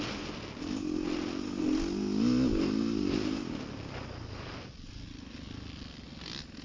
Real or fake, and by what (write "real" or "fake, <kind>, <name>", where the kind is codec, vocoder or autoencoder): real